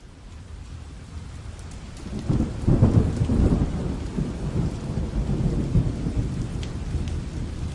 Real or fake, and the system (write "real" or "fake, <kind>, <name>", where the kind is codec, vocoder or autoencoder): fake, vocoder, BigVGAN v2